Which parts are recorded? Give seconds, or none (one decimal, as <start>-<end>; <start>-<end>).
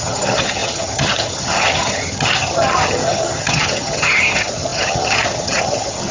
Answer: none